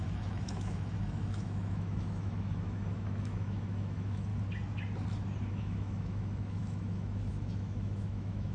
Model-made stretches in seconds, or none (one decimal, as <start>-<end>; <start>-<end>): 0.0-4.3; 5.5-8.5